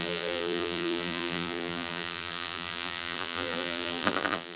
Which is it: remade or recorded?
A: remade